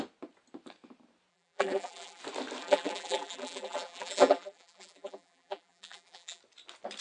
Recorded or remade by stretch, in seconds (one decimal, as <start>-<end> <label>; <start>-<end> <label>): 0.0-1.3 recorded; 1.3-2.2 remade; 2.2-2.6 recorded; 2.6-6.4 remade; 6.4-7.0 recorded